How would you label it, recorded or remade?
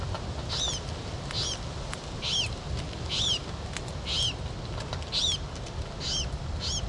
recorded